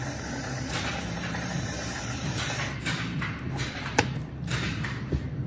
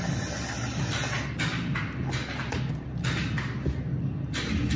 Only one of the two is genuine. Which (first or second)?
second